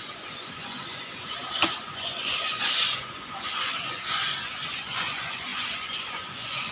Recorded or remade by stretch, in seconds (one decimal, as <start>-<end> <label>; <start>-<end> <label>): 0.0-6.7 remade